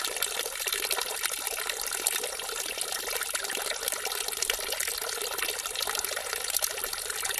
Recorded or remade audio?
recorded